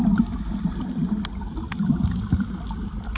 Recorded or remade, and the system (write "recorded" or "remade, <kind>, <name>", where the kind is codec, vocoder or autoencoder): recorded